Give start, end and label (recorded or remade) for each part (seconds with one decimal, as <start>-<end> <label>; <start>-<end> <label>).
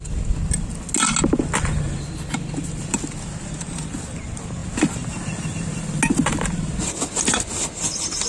0.0-8.3 recorded